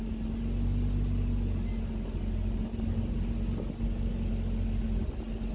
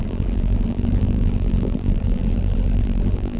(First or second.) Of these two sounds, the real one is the first